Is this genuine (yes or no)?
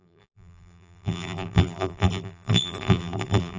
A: no